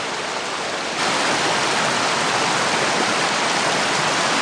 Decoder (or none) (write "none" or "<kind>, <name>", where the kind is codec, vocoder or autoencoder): none